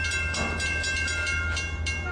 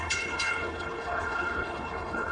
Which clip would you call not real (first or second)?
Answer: second